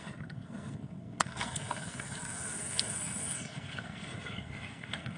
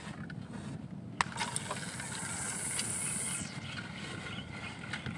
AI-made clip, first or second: first